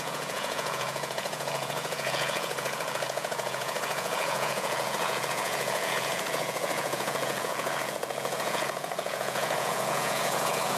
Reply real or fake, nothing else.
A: fake